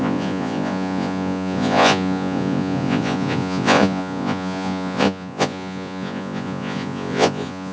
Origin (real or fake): fake